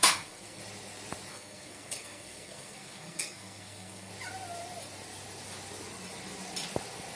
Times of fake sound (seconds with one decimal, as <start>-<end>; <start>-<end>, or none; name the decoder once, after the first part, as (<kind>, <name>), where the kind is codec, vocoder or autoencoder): 0.0-0.6 (codec, SNAC); 1.3-4.1

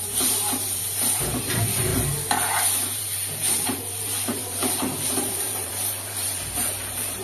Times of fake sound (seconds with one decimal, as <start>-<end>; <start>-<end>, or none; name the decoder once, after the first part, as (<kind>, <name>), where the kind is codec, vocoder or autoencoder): 0.0-1.9 (vocoder, BigVGAN v2); 2.7-7.2

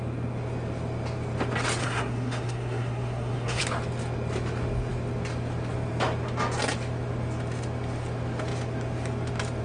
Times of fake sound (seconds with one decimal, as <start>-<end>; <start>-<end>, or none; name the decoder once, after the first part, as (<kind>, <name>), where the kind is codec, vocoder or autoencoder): 1.8-3.6 (codec, SNAC)

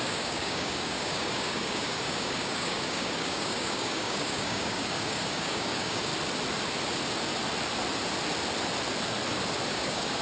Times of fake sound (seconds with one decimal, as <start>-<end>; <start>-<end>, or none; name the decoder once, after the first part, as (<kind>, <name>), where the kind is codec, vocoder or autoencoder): 0.0-6.1 (codec, DAC); 9.7-10.2

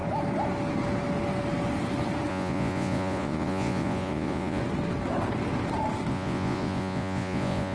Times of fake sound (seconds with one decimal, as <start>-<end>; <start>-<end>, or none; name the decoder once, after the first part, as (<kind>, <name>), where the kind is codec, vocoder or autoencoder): 2.3-4.6 (vocoder, Vocos); 6.1-7.7

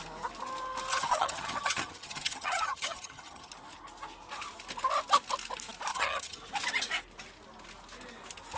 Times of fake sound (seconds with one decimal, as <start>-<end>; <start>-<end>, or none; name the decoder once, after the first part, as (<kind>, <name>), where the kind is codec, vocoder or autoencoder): 0.9-3.5 (vocoder, HiFi-GAN); 5.9-6.4

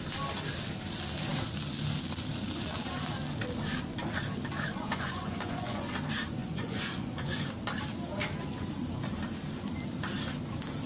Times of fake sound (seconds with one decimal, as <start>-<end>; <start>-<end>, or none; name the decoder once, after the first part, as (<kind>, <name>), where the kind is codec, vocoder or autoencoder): 4.7-5.9 (vocoder, Vocos); 6.4-7.5